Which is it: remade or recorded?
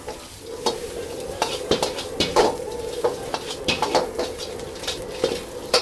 remade